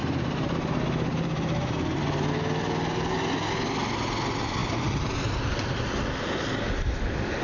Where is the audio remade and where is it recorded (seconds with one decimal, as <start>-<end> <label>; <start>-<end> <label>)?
0.0-2.0 remade; 2.0-7.4 recorded